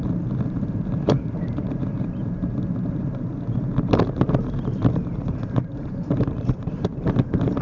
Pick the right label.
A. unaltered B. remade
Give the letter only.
B